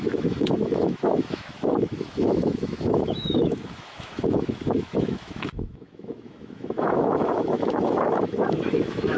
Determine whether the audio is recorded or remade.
remade